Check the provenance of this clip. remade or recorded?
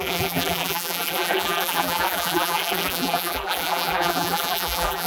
remade